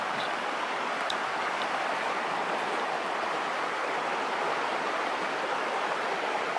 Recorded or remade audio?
remade